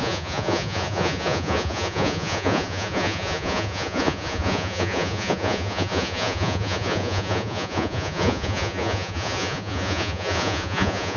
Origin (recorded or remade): remade